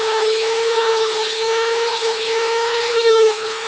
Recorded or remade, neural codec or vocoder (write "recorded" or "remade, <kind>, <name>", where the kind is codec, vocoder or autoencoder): remade, codec, HILCodec